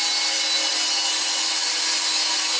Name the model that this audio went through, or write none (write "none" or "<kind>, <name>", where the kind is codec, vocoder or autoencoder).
none